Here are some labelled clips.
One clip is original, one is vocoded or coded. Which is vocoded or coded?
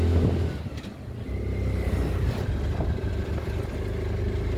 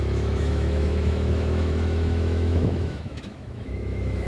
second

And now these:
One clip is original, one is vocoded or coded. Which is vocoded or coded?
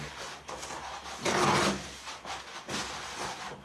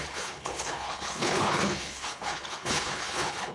second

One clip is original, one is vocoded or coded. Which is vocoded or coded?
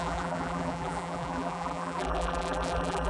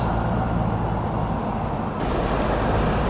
first